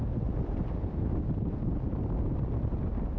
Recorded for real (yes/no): yes